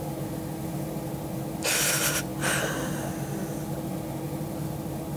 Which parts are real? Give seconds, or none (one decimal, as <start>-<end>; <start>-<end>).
0.0-5.2